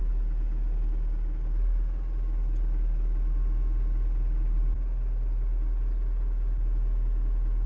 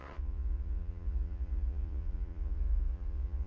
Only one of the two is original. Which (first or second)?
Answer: first